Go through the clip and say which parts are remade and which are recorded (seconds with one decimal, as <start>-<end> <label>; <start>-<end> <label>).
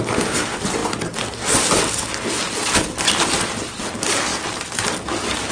0.0-5.5 recorded